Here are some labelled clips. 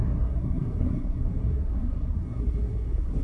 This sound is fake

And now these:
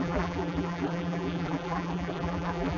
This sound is fake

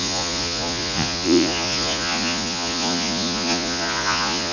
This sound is fake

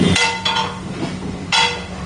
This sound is real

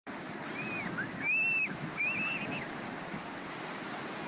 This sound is real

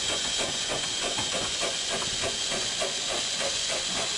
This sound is fake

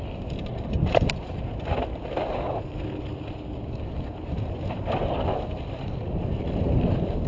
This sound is real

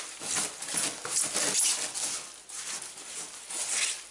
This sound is real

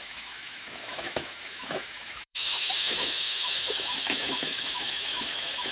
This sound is fake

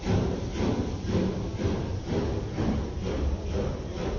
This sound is real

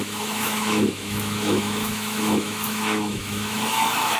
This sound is fake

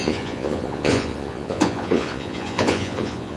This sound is fake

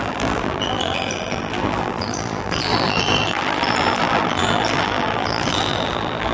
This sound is fake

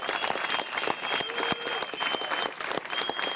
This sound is real